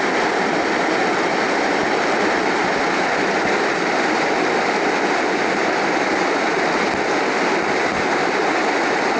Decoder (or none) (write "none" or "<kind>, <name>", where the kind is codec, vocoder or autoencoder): none